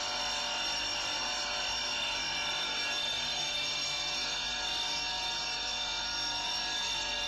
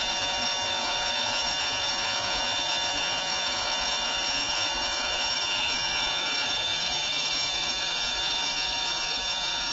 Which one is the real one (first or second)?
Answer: first